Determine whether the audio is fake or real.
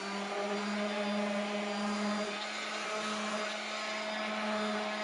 real